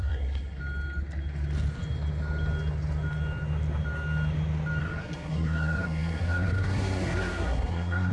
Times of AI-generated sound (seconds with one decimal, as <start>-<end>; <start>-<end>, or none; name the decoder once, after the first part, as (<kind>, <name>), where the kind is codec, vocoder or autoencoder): 0.0-0.6 (codec, SNAC); 4.8-8.1